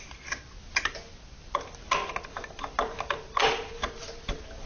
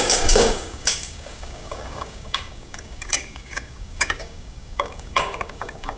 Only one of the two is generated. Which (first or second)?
second